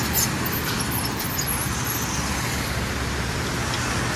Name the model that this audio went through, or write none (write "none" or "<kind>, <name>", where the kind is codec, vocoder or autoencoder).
none